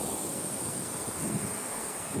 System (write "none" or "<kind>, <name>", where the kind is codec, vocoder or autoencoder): codec, SNAC